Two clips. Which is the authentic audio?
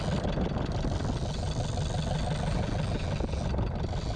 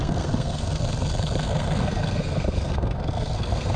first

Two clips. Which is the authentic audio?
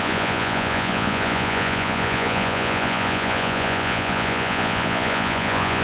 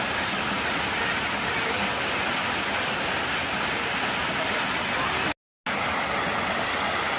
second